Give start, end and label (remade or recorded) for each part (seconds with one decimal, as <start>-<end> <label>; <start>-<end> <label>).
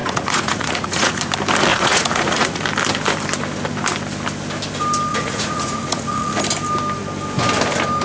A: 0.0-1.2 remade; 1.2-1.7 recorded; 1.7-2.6 remade; 2.6-5.1 recorded; 5.1-6.4 remade; 6.4-8.0 recorded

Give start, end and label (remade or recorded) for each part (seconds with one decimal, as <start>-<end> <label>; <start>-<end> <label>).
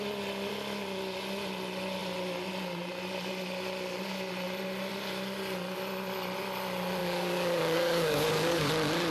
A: 0.0-7.0 recorded; 7.0-8.7 remade; 8.7-9.1 recorded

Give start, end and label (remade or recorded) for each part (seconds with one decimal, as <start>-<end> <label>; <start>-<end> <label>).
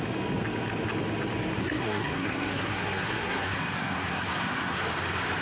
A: 0.0-1.6 recorded; 1.6-4.8 remade; 4.8-5.4 recorded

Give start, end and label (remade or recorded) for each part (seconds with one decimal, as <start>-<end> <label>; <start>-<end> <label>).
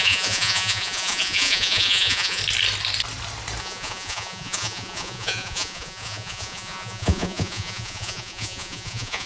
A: 0.0-2.4 remade; 2.4-3.6 recorded; 3.6-9.3 remade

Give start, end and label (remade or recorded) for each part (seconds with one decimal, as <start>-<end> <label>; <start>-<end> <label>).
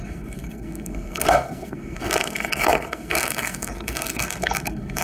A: 0.0-5.0 remade